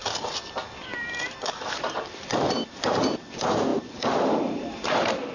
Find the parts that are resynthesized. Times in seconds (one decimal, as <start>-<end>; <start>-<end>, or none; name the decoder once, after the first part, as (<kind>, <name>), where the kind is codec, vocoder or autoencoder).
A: 1.2-5.3 (vocoder, BigVGAN v2)